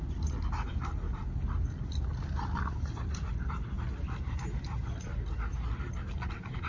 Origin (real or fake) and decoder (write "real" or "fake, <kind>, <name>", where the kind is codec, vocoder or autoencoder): real